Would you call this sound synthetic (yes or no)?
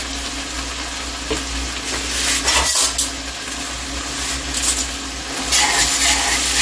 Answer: no